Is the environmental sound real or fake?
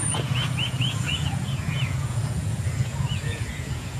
fake